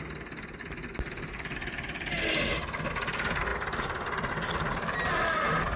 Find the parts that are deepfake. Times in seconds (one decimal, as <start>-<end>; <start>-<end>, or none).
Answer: 3.5-4.3